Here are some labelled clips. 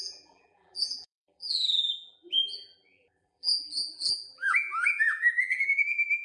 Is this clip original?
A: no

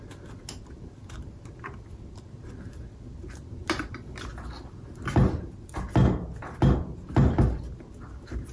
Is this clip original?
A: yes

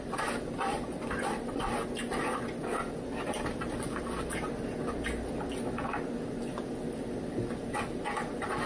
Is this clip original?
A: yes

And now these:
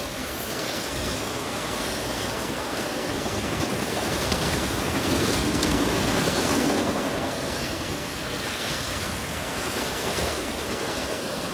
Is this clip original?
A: no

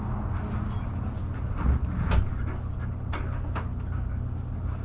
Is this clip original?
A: yes